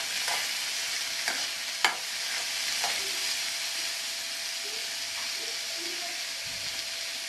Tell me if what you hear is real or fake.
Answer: real